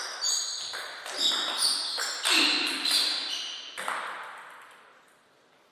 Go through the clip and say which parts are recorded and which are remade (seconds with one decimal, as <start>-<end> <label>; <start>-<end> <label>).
0.0-5.7 recorded